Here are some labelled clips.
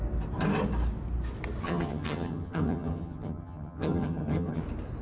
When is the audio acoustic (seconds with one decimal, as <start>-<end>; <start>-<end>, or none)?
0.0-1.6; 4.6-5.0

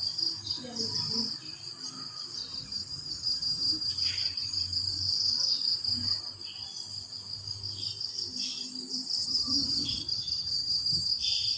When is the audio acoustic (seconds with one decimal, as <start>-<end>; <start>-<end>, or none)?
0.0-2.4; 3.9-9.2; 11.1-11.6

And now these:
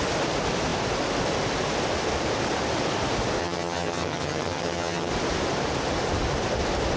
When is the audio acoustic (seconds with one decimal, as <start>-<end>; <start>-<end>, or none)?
0.0-3.4; 5.1-7.0